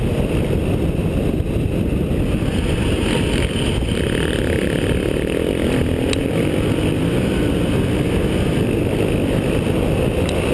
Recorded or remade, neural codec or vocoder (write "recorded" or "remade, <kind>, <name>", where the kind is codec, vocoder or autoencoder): recorded